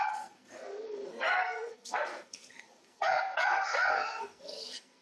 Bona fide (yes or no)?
no